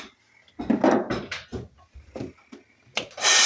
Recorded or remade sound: recorded